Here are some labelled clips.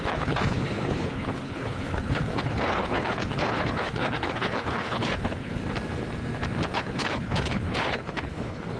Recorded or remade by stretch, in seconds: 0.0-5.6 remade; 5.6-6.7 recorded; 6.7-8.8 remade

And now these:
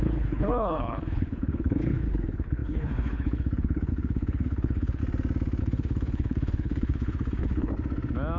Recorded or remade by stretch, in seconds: 0.0-5.0 remade; 5.0-5.6 recorded; 5.6-7.7 remade; 7.7-8.4 recorded

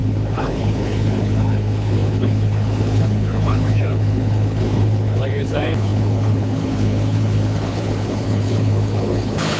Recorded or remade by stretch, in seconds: 0.0-9.6 remade

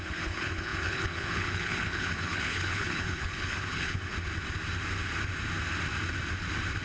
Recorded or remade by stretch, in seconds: 0.0-4.1 remade; 4.1-6.8 recorded